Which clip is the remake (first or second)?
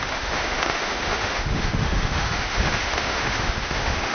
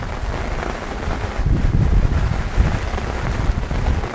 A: first